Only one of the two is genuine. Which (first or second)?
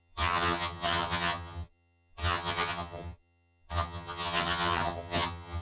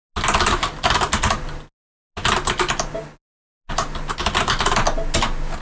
second